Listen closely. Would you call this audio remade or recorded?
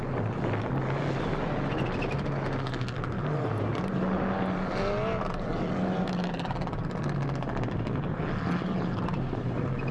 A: recorded